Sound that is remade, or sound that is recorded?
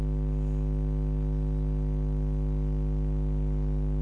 recorded